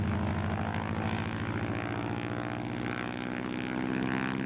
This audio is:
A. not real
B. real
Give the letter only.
B